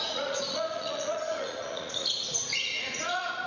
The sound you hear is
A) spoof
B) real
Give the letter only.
A